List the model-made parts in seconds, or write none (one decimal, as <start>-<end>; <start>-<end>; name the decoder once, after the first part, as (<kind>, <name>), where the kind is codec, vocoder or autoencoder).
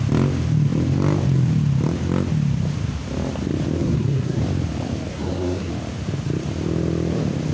3.8-4.4 (codec, SNAC); 5.1-5.7